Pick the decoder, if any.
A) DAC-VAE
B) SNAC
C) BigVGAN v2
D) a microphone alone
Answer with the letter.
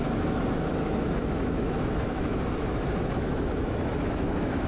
A